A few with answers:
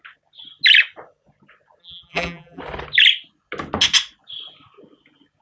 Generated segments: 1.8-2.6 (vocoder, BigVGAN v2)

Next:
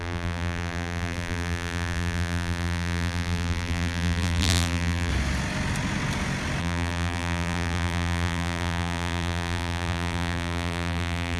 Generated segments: 0.0-5.1 (vocoder, BigVGAN v2); 6.6-11.4

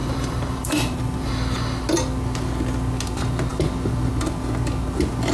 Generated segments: 0.0-1.3 (vocoder, BigVGAN v2)

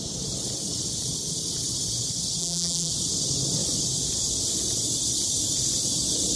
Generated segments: 2.4-2.9 (vocoder, BigVGAN v2)

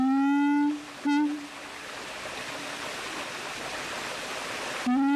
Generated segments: none